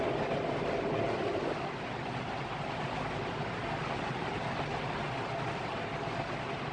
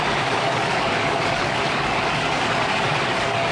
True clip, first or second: first